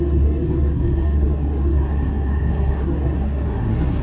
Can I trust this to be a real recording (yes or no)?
no